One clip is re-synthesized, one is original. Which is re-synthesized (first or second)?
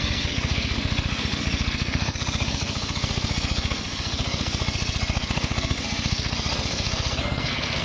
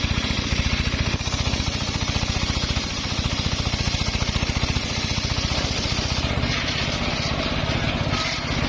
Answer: first